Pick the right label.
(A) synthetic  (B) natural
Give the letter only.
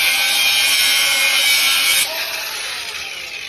A